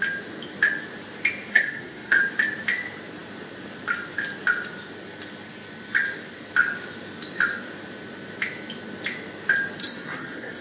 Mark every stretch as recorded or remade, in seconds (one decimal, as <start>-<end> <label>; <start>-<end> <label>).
0.0-1.5 recorded; 1.5-2.2 remade; 2.2-9.8 recorded; 9.8-10.6 remade